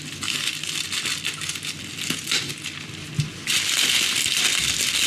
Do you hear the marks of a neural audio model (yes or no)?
no